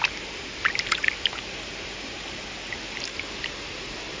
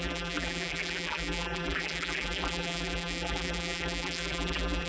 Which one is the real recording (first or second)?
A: first